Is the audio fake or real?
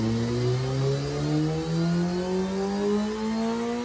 real